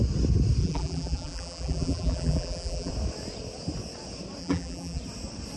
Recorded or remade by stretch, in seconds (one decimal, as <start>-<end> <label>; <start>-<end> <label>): 0.0-0.6 recorded; 0.6-2.9 remade; 2.9-4.4 recorded; 4.4-5.0 remade; 5.0-5.6 recorded